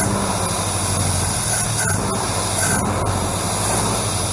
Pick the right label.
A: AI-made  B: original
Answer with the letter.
B